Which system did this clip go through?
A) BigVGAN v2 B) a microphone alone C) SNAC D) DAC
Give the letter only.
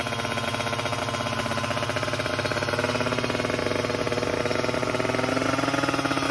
B